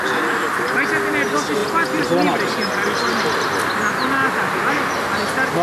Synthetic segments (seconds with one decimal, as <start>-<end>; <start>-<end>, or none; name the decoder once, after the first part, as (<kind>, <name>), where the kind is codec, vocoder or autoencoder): none